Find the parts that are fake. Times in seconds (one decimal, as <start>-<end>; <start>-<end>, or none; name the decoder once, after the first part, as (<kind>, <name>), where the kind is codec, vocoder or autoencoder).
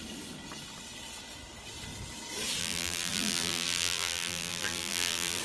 2.6-5.4 (vocoder, BigVGAN v2)